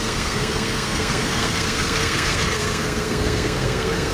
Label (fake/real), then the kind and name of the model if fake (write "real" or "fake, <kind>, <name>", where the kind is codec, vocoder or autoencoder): fake, codec, SNAC